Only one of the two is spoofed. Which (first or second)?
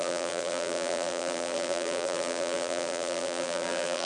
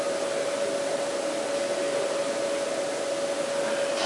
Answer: first